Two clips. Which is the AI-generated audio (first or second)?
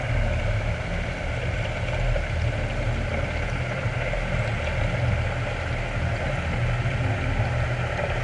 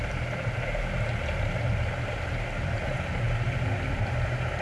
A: second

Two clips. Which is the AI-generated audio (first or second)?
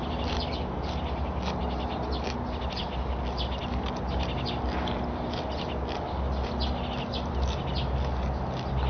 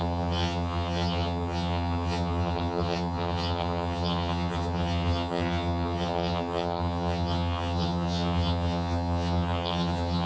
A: second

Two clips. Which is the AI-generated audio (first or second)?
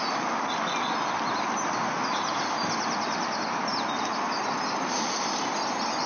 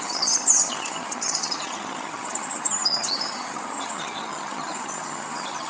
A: second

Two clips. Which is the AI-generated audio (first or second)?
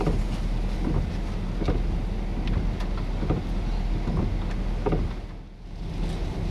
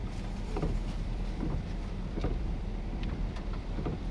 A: second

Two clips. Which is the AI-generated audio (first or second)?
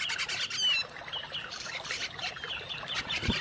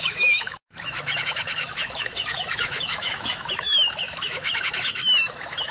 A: second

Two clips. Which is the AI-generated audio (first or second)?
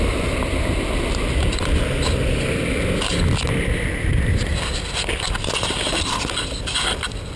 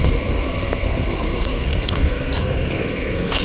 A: second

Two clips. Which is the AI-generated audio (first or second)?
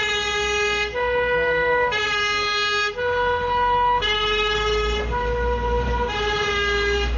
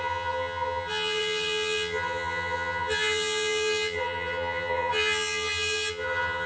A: second